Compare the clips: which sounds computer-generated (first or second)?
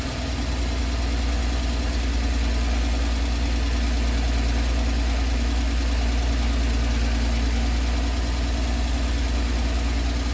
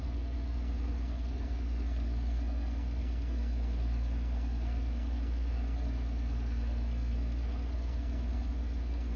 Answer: second